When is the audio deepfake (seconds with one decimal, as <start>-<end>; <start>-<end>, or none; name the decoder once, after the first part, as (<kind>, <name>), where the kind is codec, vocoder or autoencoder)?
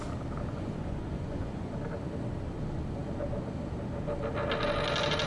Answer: 0.5-1.7 (vocoder, Vocos)